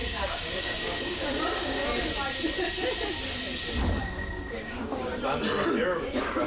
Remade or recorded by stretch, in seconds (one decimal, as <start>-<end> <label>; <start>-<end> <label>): 0.0-1.8 remade; 1.8-4.0 recorded; 4.0-5.1 remade; 5.1-5.7 recorded; 5.7-6.5 remade